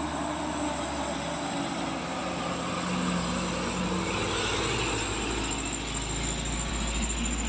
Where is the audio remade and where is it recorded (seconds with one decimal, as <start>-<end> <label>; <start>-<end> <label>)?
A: 0.0-7.5 recorded